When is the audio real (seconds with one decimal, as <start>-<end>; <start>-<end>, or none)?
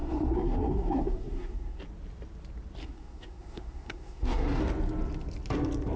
1.8-2.8; 4.6-6.0